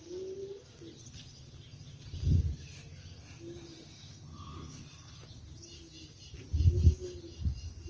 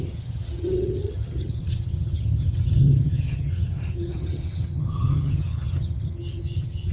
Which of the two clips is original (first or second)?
first